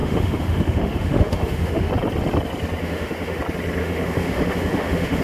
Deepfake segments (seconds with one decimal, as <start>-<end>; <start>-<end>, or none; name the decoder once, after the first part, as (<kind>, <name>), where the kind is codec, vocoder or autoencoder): 0.0-1.9 (autoencoder, DAC-VAE); 2.8-3.4; 3.8-5.2